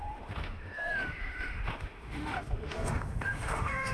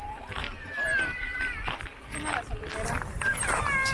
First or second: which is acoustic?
second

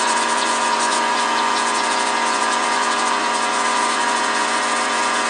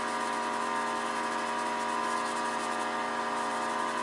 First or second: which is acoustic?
second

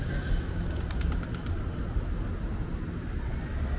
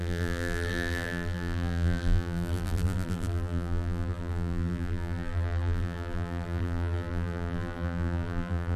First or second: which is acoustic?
first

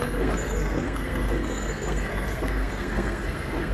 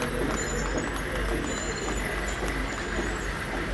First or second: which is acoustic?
second